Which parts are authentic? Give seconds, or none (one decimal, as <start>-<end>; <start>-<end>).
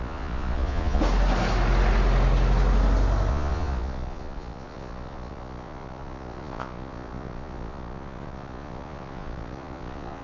1.0-3.3